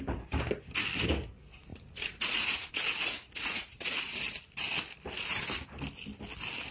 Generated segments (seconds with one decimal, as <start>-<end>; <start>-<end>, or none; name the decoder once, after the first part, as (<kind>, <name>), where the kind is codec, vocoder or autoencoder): 1.7-2.7 (vocoder, Vocos); 3.1-4.2